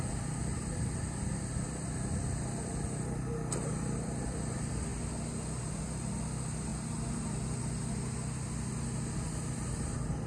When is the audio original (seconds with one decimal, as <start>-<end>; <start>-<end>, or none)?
0.0-10.3